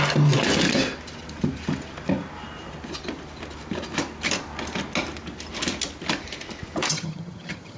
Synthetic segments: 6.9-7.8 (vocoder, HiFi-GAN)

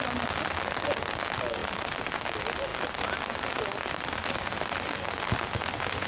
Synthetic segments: none

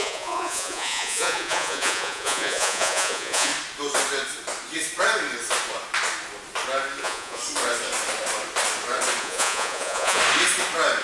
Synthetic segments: 0.0-3.5 (vocoder, Vocos); 7.0-7.4; 9.2-10.2

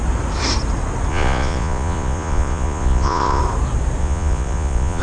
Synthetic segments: 1.1-3.4 (vocoder, Vocos); 4.0-5.0

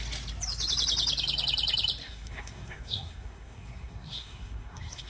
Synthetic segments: 2.0-5.1 (codec, SNAC)

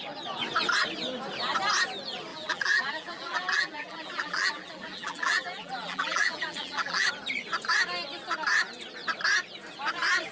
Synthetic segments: 2.3-7.1 (vocoder, BigVGAN v2)

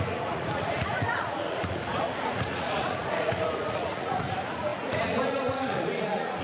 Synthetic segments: 0.0-6.4 (vocoder, Vocos)